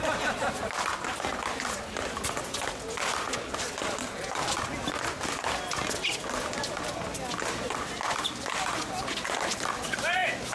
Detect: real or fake real